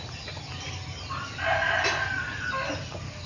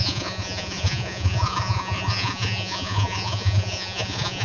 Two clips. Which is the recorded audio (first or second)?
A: first